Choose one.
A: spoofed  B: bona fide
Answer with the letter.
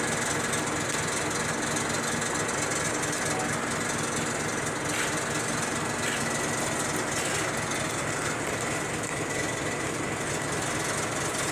B